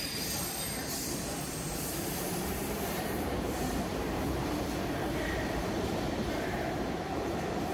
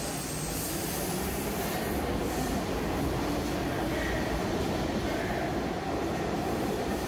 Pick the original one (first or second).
second